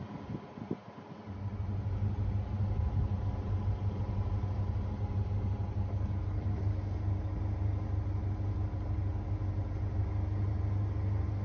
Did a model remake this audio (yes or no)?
no